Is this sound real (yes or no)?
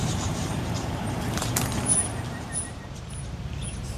no